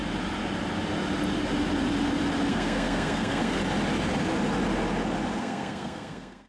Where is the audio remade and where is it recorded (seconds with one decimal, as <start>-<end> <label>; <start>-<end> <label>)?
0.0-2.5 recorded; 2.5-3.6 remade; 3.6-5.4 recorded; 5.4-6.5 remade